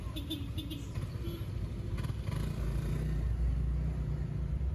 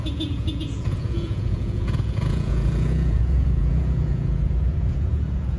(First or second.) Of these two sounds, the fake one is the second